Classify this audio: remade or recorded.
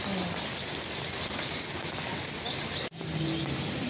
recorded